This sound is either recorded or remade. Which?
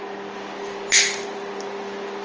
recorded